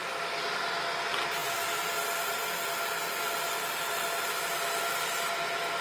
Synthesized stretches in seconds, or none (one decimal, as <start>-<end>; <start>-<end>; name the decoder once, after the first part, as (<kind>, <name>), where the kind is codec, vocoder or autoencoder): none